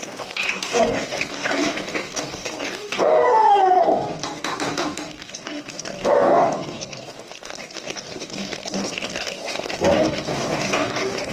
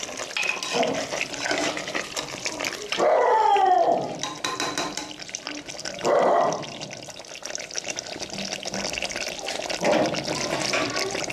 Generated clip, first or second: first